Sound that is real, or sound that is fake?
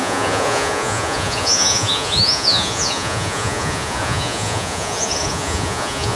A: fake